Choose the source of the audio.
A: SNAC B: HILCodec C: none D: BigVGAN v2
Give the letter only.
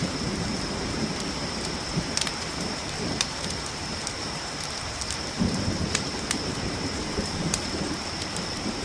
D